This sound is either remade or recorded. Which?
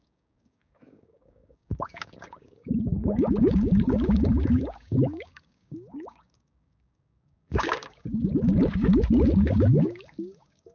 remade